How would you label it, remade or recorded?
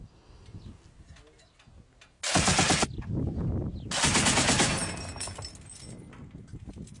recorded